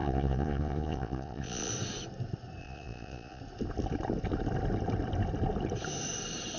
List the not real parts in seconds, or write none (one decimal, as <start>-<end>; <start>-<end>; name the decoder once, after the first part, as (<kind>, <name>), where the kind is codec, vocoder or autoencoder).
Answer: 0.0-1.7 (vocoder, Vocos); 2.6-3.4